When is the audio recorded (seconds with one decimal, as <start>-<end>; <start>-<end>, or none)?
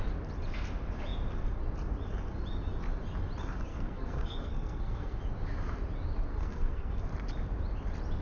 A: 0.0-3.7; 5.2-6.3; 7.0-8.2